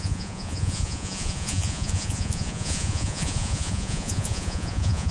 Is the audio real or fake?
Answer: fake